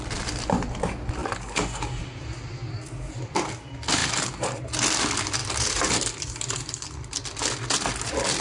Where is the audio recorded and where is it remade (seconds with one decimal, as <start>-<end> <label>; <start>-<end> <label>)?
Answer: 0.0-8.4 recorded